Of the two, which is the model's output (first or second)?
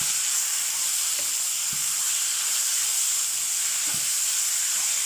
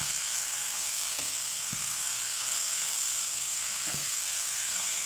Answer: second